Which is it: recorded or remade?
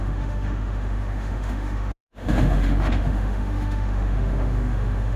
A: remade